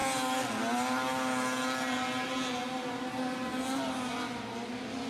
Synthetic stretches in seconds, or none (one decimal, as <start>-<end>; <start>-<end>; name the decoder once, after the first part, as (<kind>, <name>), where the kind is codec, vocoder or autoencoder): none